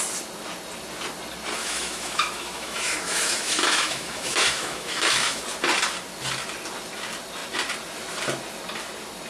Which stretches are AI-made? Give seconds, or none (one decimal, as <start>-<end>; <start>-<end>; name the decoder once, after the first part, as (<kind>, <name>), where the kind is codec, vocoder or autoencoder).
1.6-5.4 (autoencoder, DAC-VAE)